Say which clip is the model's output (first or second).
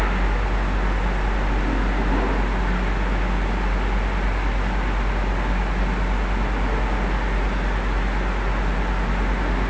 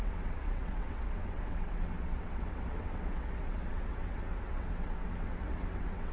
second